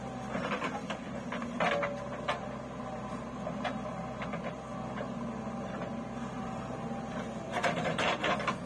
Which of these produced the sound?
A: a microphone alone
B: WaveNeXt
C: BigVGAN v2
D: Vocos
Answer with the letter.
A